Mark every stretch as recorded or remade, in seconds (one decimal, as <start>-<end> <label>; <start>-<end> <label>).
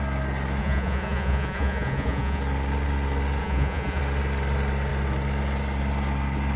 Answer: 0.0-0.6 recorded; 0.6-2.4 remade; 2.4-3.4 recorded; 3.4-4.0 remade; 4.0-6.6 recorded